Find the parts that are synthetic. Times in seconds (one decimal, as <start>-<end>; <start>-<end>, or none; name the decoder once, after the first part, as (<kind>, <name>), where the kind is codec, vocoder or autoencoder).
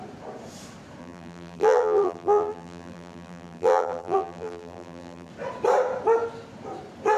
1.0-5.3 (vocoder, BigVGAN v2)